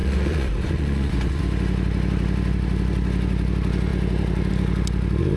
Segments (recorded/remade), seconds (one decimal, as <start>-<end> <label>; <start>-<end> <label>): 0.0-1.4 remade; 1.4-5.4 recorded